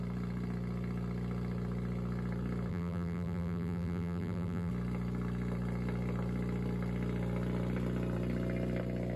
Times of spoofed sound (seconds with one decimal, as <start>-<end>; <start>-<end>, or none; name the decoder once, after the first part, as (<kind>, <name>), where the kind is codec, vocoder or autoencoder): 2.7-4.7 (vocoder, BigVGAN v2)